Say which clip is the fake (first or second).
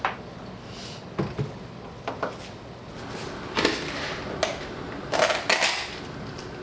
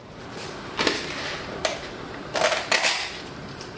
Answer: second